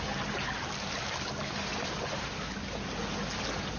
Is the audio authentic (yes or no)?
yes